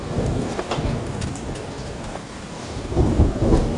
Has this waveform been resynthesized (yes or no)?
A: yes